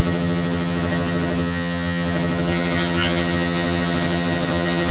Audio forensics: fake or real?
fake